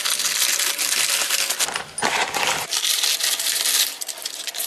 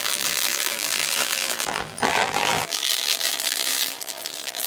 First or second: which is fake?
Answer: second